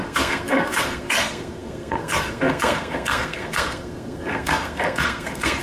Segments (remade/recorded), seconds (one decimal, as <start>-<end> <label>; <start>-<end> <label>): 0.0-5.6 remade